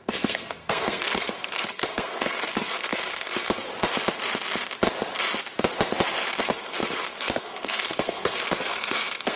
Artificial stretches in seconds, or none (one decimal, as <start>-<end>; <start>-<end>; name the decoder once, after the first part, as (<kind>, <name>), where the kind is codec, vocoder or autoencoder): 0.0-3.7 (codec, SNAC); 6.4-9.3